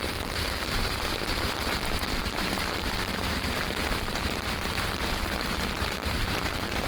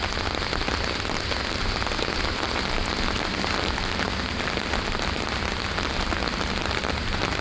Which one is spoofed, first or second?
first